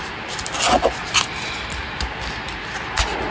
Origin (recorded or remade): recorded